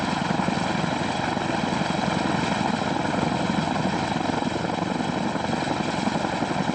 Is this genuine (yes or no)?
yes